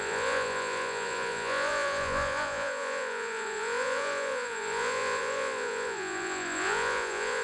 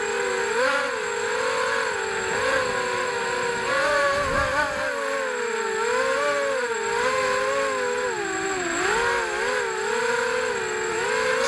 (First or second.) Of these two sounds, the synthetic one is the first